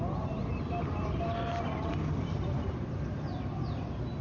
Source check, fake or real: real